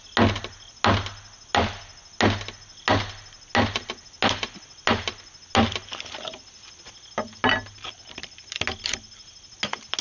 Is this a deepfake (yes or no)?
no